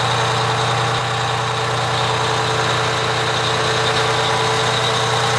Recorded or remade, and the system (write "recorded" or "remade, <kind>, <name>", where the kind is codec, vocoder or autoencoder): recorded